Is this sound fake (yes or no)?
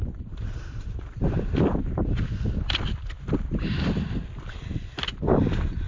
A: no